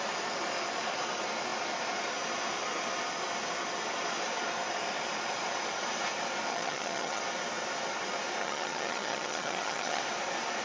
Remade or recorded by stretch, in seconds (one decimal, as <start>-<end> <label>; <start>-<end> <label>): 0.0-6.5 recorded; 6.5-7.2 remade; 7.2-8.4 recorded; 8.4-10.0 remade; 10.0-10.6 recorded